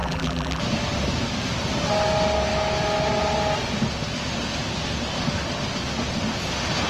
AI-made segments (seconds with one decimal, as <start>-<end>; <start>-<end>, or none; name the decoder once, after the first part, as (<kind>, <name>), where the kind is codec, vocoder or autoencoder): 0.0-0.6 (vocoder, BigVGAN v2)